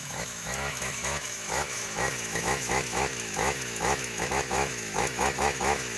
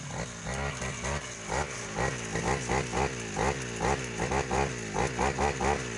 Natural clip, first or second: second